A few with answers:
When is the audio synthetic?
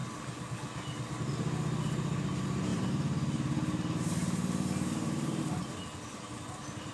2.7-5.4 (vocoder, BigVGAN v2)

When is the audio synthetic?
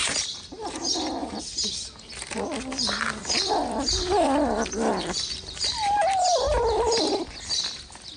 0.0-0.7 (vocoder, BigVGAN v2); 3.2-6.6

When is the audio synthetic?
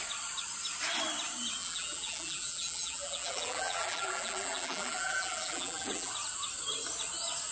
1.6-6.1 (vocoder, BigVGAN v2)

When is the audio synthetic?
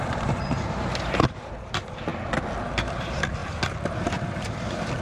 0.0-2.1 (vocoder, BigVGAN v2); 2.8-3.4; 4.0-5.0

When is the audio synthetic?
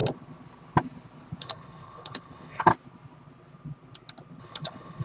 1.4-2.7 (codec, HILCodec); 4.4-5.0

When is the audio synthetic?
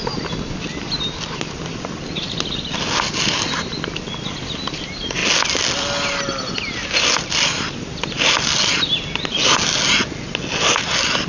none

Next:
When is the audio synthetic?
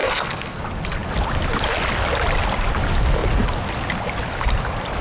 0.0-0.6 (codec, SNAC)